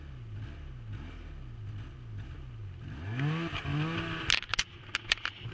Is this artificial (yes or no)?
no